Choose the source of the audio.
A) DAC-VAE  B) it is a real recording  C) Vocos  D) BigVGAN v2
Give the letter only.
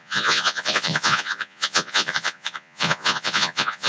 C